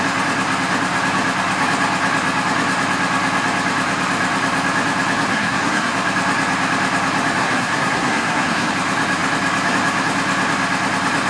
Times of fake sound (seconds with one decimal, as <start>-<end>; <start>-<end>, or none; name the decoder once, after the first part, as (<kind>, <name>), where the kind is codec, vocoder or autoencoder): 5.3-5.9 (codec, SNAC); 7.4-8.7